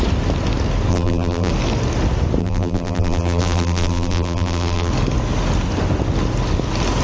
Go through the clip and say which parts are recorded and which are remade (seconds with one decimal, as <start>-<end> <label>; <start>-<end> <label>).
0.0-0.9 recorded; 0.9-1.5 remade; 1.5-2.4 recorded; 2.4-4.9 remade; 4.9-7.0 recorded